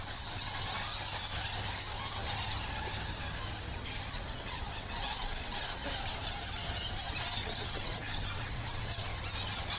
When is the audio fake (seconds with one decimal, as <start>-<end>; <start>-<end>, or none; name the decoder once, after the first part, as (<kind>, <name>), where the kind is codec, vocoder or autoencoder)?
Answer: 0.0-0.9 (vocoder, WaveNeXt); 4.1-5.8; 7.2-9.1